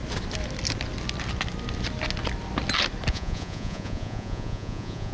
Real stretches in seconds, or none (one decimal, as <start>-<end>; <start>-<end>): 0.0-3.1